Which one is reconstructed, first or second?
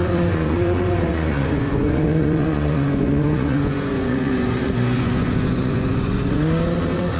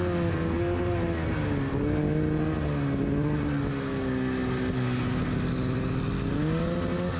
first